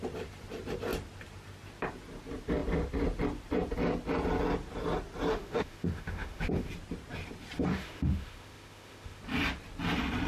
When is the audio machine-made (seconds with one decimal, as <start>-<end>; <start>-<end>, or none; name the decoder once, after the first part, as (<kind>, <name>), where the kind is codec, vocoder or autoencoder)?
5.3-6.7 (autoencoder, DAC-VAE); 7.7-9.2